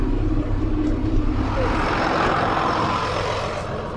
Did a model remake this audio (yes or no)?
no